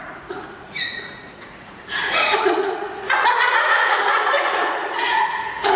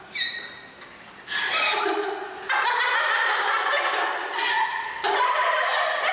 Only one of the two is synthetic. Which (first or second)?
first